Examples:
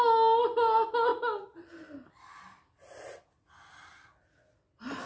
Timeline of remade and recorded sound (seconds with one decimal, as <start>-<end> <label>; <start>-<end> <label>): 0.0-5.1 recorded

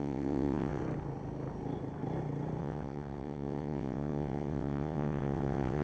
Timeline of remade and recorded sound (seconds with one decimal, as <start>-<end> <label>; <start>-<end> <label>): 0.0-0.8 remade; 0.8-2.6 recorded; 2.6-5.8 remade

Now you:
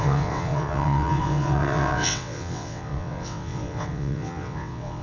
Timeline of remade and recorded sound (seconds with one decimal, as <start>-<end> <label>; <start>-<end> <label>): 0.0-5.0 remade

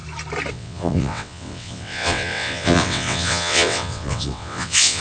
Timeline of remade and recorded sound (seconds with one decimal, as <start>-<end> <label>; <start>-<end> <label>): 0.0-0.5 recorded; 0.5-5.0 remade

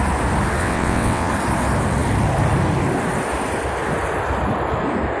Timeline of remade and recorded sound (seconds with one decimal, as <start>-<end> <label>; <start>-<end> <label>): 0.0-0.6 recorded; 0.6-1.3 remade; 1.3-5.2 recorded

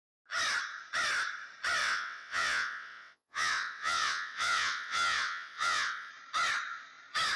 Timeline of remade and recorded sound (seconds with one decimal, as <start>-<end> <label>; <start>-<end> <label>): 0.0-1.8 recorded; 1.8-6.1 remade; 6.1-7.4 recorded

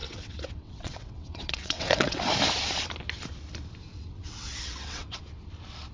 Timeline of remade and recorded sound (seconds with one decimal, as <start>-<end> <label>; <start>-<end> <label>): 0.0-2.2 remade; 2.2-3.9 recorded; 3.9-5.2 remade; 5.2-5.9 recorded

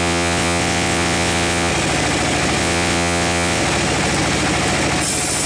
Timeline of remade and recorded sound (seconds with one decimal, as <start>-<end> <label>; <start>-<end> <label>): 0.0-1.7 remade; 1.7-2.6 recorded; 2.6-3.6 remade; 3.6-5.5 recorded